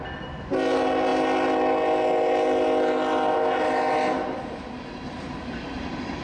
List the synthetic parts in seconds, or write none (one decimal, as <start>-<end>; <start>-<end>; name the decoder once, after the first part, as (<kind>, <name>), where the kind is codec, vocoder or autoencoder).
none